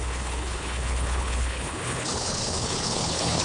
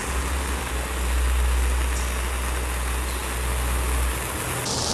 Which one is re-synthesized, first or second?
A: first